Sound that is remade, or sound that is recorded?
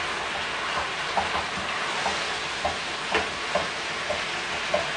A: recorded